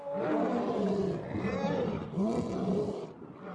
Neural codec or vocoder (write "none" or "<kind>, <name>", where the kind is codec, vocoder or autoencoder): none